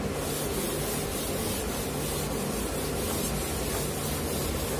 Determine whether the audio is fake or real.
real